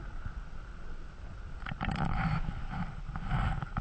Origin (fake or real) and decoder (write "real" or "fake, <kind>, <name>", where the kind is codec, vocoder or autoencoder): real